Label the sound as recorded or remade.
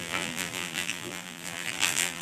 remade